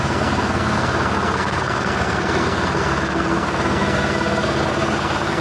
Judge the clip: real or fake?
fake